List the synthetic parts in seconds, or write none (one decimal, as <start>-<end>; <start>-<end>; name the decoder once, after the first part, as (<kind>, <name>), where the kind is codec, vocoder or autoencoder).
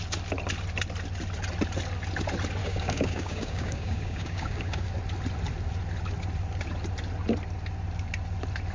2.6-4.9 (codec, DAC)